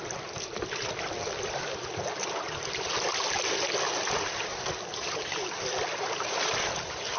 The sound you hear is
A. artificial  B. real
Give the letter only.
B